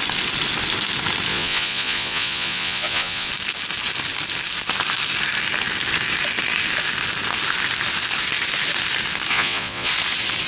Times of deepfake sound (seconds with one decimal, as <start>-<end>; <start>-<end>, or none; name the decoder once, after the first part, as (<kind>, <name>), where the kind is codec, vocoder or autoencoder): 1.3-3.3 (vocoder, Vocos); 9.3-9.9